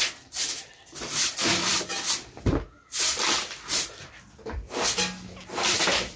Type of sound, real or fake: real